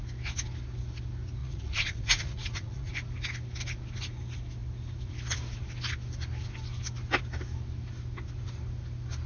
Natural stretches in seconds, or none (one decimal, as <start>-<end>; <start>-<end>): 0.0-1.4; 2.9-9.3

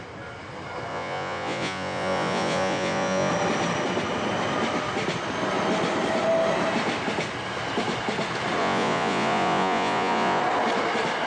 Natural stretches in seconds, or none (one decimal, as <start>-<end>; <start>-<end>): 0.0-0.9; 3.3-8.6; 10.4-11.3

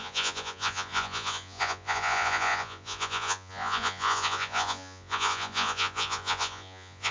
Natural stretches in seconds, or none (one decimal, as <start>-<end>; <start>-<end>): none